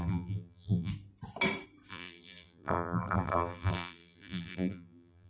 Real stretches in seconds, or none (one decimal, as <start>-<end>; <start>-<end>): 0.9-1.9

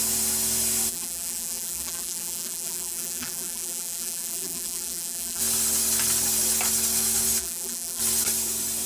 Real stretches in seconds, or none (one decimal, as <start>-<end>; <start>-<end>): 0.0-0.9; 5.4-7.4; 8.0-8.9

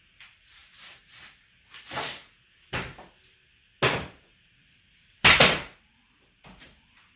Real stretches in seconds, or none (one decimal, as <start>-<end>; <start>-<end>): 0.6-4.9

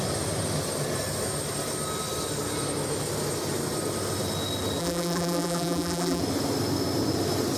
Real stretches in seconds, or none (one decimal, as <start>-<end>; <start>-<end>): 0.0-4.8; 6.2-7.6

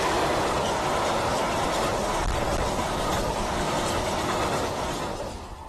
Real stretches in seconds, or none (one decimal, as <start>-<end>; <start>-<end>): 0.0-1.3; 1.9-5.7

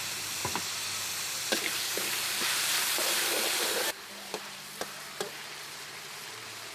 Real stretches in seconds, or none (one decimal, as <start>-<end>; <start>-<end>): 0.4-1.8

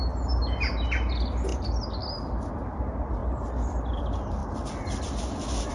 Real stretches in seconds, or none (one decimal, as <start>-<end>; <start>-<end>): 0.0-5.7